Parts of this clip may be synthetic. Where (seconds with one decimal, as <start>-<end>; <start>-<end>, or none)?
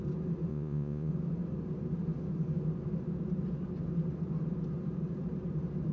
0.5-1.1